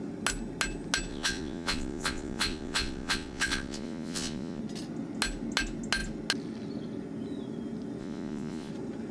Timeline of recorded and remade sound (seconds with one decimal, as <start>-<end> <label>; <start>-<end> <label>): 0.0-1.1 recorded; 1.1-4.6 remade; 4.6-8.0 recorded; 8.0-8.7 remade; 8.7-9.1 recorded